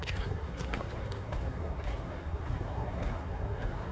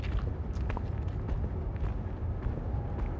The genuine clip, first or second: second